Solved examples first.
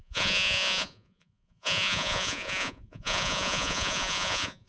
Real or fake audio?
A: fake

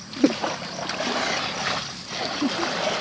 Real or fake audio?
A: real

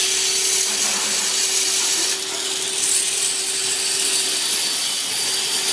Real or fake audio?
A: real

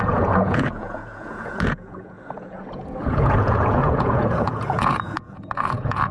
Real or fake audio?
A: fake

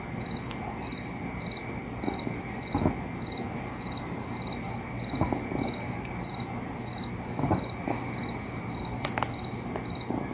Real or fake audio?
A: real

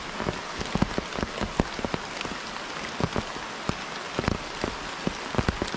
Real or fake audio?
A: real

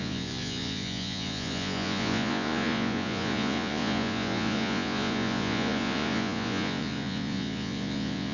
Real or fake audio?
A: fake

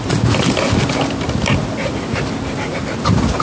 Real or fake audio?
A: real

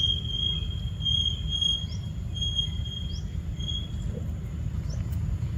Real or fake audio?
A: real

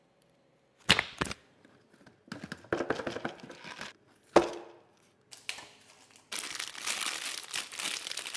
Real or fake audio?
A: real